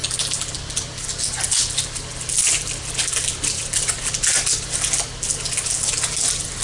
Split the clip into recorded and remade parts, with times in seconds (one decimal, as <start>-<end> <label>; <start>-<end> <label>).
0.0-6.6 recorded